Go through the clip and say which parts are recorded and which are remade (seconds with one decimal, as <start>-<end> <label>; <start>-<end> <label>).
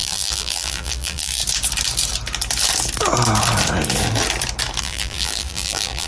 0.0-1.4 remade; 1.4-4.8 recorded; 4.8-6.1 remade